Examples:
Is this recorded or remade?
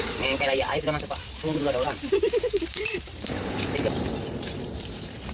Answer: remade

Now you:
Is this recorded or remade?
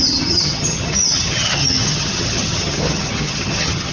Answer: remade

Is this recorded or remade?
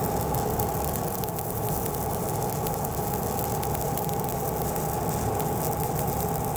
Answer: recorded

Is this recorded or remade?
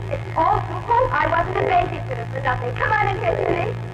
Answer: remade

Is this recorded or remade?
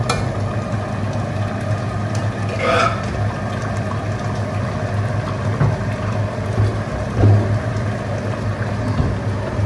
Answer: recorded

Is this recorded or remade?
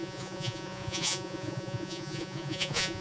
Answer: remade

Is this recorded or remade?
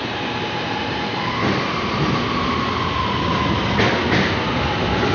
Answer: recorded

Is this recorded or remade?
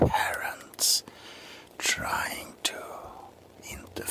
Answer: recorded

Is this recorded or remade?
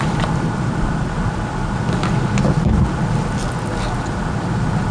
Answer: recorded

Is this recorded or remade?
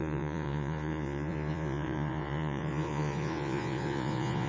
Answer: remade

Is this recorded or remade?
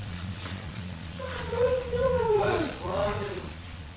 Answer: remade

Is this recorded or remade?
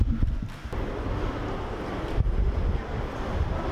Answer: recorded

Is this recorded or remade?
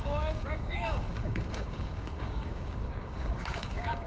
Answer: remade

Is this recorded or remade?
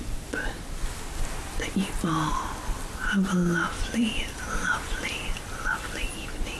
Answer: recorded